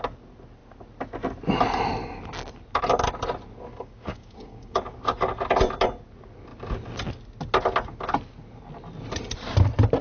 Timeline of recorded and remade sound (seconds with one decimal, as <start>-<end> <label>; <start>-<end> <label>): 0.0-3.7 recorded; 3.7-4.8 remade; 4.8-10.0 recorded